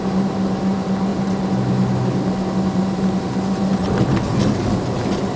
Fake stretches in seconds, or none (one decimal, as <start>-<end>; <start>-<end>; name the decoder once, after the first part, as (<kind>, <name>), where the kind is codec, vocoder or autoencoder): none